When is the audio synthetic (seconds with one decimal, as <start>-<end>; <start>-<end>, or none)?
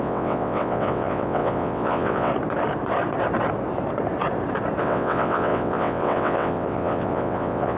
0.0-2.3; 4.8-7.8